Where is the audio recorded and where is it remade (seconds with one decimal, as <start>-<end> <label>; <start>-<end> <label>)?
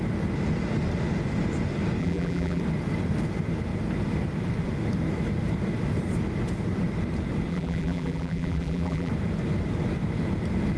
0.0-2.0 recorded; 2.0-2.6 remade; 2.6-7.5 recorded; 7.5-9.1 remade; 9.1-10.8 recorded